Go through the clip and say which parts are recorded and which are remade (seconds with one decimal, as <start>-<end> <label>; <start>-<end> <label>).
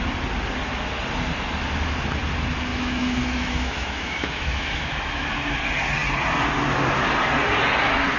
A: 0.0-2.7 recorded; 2.7-5.3 remade; 5.3-8.2 recorded